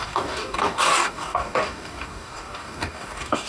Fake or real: fake